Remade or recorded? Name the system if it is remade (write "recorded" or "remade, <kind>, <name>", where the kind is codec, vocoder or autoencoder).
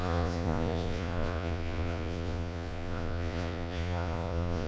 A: remade, vocoder, Vocos